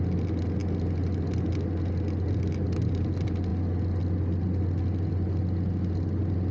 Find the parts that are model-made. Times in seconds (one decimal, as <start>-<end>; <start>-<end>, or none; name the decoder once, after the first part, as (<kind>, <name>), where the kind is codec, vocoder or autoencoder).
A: none